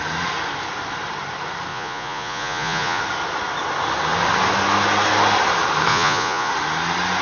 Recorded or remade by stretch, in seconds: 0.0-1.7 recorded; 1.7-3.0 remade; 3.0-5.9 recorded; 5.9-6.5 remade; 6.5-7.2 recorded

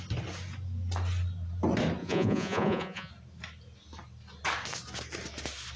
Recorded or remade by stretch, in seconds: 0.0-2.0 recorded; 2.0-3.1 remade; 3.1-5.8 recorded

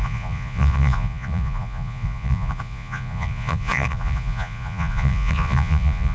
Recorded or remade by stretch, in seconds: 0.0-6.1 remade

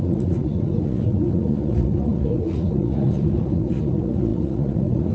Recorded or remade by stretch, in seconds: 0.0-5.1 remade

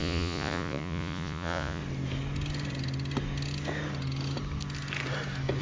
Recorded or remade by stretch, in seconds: 0.0-1.8 remade; 1.8-5.6 recorded